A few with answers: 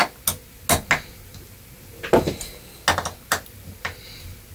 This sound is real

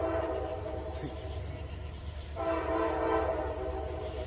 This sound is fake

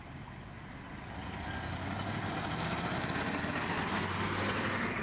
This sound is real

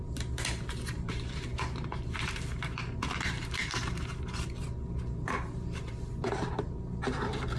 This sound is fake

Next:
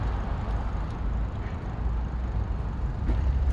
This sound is real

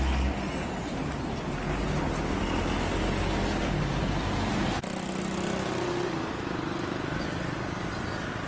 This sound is real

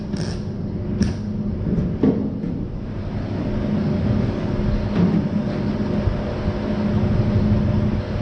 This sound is real